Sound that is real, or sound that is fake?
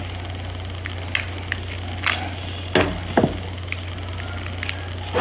real